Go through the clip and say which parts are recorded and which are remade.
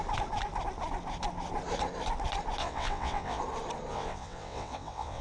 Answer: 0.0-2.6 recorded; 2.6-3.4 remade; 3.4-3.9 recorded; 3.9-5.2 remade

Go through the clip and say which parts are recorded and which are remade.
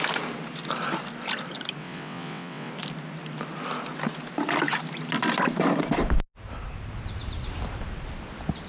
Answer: 0.0-1.8 recorded; 1.8-2.7 remade; 2.7-8.7 recorded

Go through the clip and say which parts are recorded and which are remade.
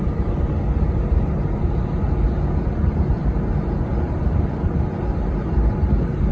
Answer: 0.0-6.3 recorded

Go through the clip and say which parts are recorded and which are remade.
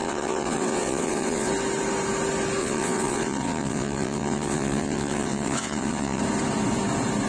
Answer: 0.0-1.5 remade; 1.5-2.6 recorded; 2.6-6.2 remade; 6.2-7.3 recorded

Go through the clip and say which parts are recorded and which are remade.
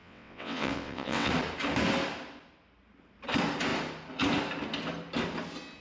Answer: 0.0-1.3 remade; 1.3-5.8 recorded